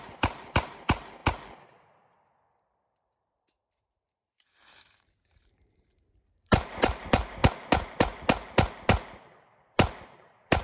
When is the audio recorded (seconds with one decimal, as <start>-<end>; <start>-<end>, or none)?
1.2-2.6; 7.4-10.0